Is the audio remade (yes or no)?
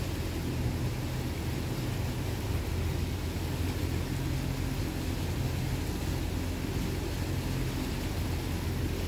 no